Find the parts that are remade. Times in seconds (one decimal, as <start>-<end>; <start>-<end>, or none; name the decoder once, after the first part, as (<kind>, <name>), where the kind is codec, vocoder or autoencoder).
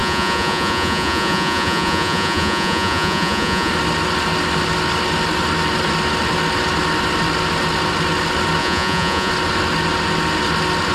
0.0-3.7 (vocoder, Vocos); 8.6-9.3